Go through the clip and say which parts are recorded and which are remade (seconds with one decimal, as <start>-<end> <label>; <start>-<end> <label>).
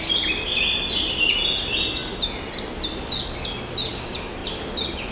0.0-5.1 recorded